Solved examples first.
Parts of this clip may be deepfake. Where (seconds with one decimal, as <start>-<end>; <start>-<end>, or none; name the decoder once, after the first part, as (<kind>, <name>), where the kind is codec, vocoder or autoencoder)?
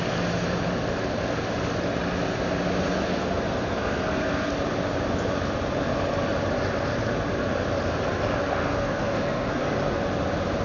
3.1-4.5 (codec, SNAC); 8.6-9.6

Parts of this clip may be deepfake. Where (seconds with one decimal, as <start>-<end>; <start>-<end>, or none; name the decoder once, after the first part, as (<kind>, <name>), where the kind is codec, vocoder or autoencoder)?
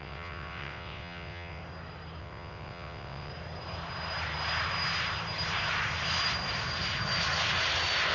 0.0-1.6 (vocoder, WaveNeXt); 2.2-3.3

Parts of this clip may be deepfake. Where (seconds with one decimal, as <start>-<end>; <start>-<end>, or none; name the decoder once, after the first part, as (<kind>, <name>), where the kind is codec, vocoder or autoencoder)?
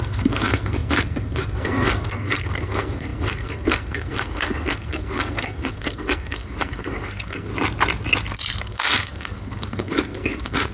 0.0-7.5 (codec, SNAC); 8.6-10.7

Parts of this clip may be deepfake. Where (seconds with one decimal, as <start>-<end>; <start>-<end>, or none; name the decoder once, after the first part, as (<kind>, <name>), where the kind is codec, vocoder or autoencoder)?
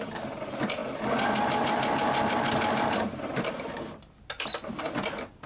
none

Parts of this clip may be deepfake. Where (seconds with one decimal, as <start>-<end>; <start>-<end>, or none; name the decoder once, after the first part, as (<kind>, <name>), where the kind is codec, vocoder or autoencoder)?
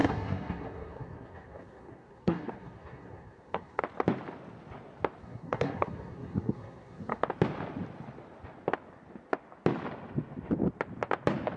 0.0-3.8 (codec, SNAC); 5.2-7.2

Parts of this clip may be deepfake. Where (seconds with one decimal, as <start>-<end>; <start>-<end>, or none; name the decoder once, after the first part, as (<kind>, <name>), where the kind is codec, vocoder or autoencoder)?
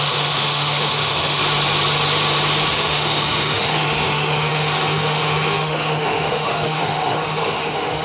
0.0-1.4 (autoencoder, DAC-VAE); 2.7-8.0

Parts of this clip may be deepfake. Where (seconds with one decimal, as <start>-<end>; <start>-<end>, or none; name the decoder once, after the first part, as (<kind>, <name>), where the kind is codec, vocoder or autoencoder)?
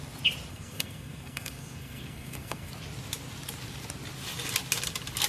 0.5-2.7 (codec, SNAC)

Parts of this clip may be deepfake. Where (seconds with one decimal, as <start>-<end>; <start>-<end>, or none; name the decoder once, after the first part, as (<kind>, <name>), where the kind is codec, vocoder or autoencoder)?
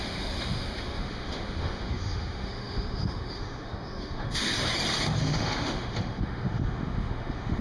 0.0-4.5 (autoencoder, DAC-VAE); 5.2-7.6